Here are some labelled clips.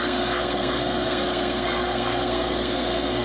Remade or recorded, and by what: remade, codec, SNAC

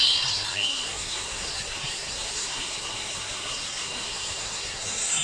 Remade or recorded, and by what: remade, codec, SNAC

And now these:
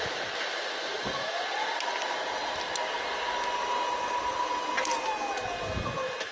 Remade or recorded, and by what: recorded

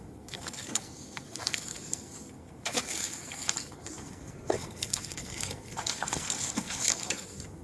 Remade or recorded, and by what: remade, codec, SNAC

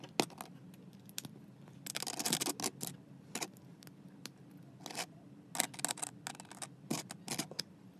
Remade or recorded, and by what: recorded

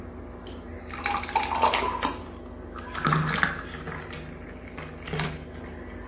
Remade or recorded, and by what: recorded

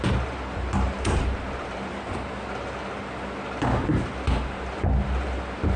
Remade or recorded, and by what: recorded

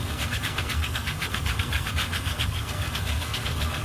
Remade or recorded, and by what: remade, codec, SNAC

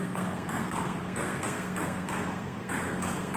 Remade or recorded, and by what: remade, codec, SNAC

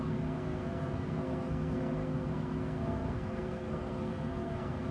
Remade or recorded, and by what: remade, codec, SNAC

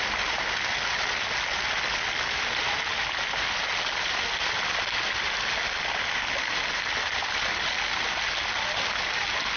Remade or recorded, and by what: recorded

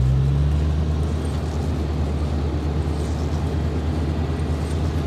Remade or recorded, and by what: recorded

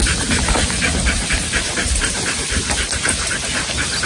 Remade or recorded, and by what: recorded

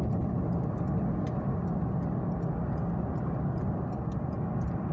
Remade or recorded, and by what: recorded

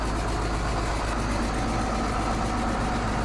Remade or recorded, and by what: recorded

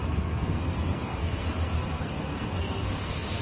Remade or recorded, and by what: remade, codec, SNAC